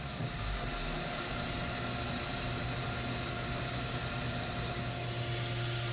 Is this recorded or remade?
recorded